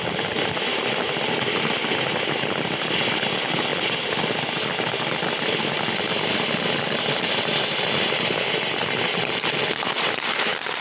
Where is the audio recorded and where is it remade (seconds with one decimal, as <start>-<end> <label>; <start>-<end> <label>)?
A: 0.0-10.8 recorded

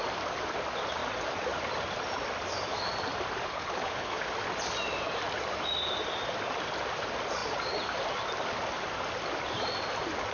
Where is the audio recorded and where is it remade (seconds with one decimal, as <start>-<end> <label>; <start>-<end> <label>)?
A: 0.0-3.5 recorded; 3.5-4.2 remade; 4.2-10.3 recorded